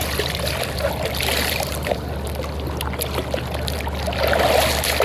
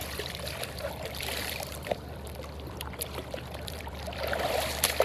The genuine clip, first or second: first